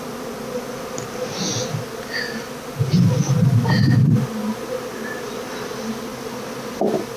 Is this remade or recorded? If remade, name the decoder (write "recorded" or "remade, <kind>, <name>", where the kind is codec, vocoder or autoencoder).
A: recorded